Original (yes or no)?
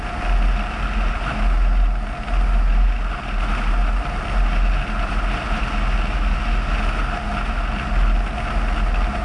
yes